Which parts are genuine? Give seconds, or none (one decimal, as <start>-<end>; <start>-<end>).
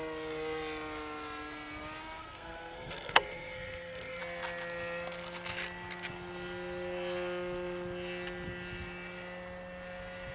0.0-2.2; 4.2-10.3